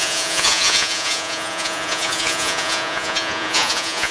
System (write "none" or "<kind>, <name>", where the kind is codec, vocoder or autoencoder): vocoder, Vocos